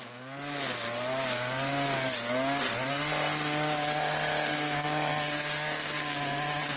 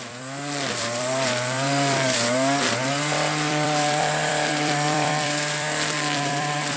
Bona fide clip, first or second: first